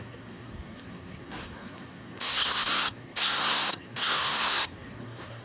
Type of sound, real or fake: fake